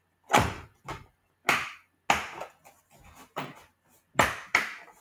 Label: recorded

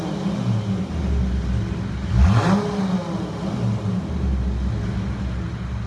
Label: recorded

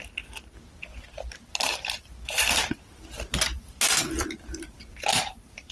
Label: recorded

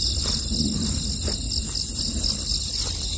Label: recorded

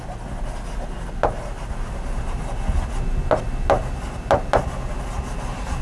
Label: recorded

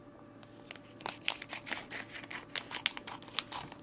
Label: recorded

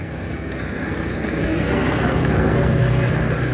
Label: remade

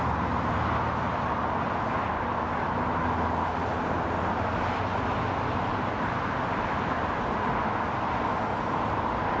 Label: recorded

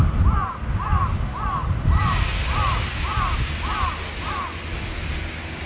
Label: recorded